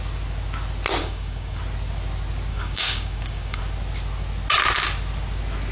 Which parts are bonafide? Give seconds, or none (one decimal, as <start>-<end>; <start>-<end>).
0.0-1.0; 1.6-2.5; 3.6-5.7